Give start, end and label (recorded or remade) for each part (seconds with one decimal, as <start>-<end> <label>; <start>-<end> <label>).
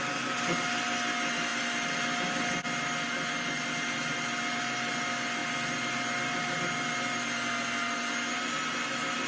0.0-9.3 recorded